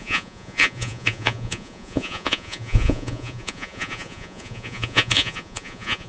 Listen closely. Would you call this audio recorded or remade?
remade